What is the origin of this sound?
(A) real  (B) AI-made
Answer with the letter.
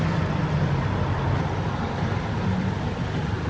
B